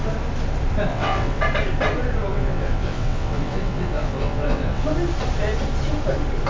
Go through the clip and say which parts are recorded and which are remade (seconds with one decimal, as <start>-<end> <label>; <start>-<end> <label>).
0.0-0.9 recorded; 0.9-1.4 remade; 1.4-2.3 recorded; 2.3-4.8 remade; 4.8-6.5 recorded